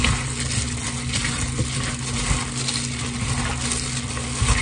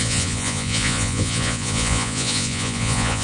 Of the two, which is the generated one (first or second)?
second